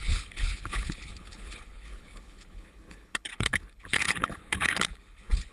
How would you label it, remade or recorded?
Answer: remade